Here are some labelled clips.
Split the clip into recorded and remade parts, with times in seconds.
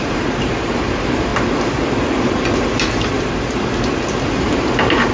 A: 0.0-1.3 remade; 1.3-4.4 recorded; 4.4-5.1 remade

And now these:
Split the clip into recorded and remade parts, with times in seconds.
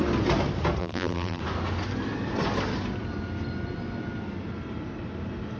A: 0.0-0.8 recorded; 0.8-1.4 remade; 1.4-5.6 recorded